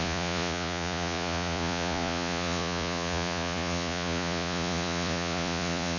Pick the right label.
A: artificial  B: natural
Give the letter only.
A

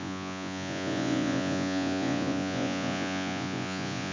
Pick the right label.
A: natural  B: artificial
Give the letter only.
B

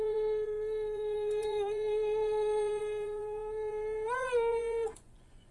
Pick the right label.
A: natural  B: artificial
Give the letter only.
B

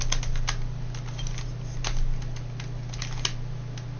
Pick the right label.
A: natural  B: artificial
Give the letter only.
A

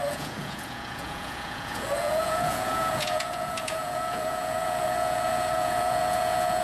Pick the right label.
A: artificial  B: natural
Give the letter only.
A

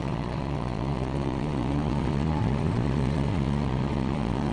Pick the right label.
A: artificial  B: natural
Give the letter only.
A